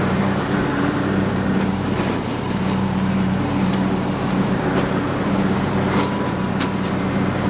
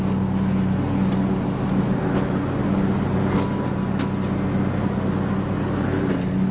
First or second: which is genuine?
second